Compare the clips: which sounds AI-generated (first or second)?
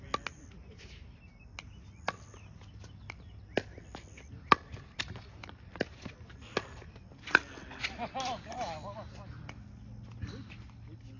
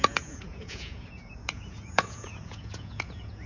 second